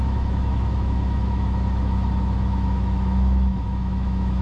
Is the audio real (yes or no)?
no